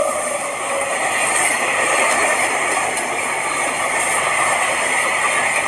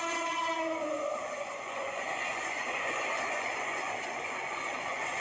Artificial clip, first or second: second